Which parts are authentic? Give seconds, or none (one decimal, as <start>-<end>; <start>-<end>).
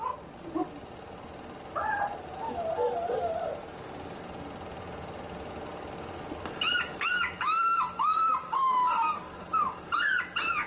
0.0-3.6; 4.2-6.9; 8.9-10.7